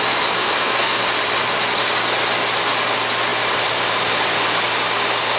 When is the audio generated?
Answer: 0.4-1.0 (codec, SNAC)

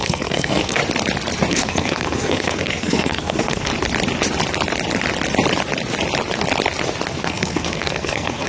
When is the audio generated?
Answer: 0.0-0.8 (codec, SNAC); 1.5-3.7; 7.1-8.5

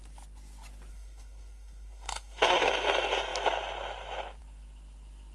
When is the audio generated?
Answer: 0.9-2.7 (codec, SNAC)